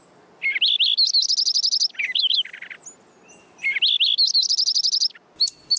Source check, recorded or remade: recorded